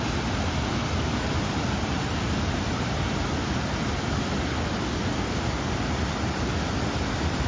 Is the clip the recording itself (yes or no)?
yes